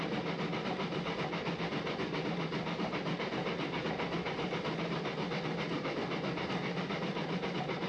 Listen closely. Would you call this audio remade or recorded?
recorded